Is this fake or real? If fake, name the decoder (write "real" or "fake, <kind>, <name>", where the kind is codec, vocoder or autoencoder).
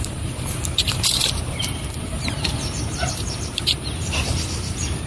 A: fake, vocoder, BigVGAN v2